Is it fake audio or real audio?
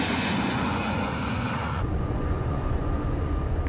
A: fake